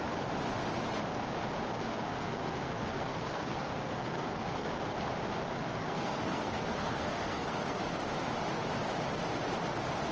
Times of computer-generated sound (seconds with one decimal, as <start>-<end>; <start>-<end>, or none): 1.9-4.7; 5.8-7.8